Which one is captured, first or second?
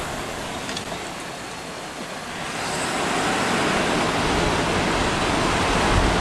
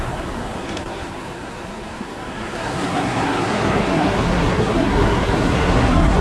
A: first